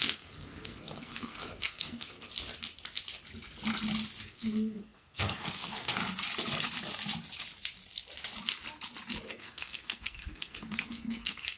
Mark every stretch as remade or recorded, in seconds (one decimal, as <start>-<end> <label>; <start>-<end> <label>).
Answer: 0.0-2.3 remade; 2.3-4.2 recorded; 4.2-6.0 remade; 6.0-9.3 recorded; 9.3-11.6 remade